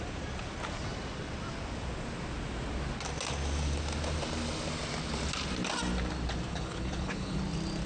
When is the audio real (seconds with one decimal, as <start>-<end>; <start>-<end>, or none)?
0.0-6.5; 7.4-7.9

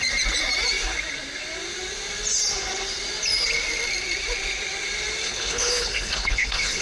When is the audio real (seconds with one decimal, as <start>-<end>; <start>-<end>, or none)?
0.0-5.2

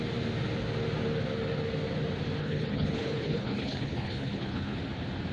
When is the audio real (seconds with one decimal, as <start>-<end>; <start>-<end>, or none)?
0.0-2.4; 4.8-5.3

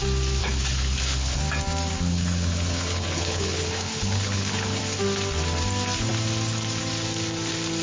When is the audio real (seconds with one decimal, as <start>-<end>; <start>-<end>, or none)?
0.0-0.4; 1.4-2.1; 4.8-7.8

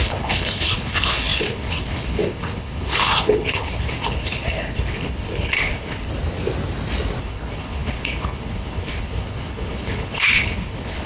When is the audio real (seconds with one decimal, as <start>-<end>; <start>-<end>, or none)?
6.1-7.2

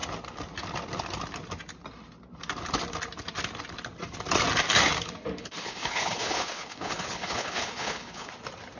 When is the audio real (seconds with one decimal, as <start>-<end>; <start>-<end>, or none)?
0.0-5.4; 8.3-8.8

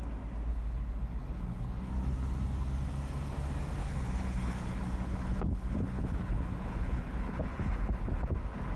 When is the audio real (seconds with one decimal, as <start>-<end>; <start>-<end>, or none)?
0.0-0.5; 1.9-3.8; 8.3-8.8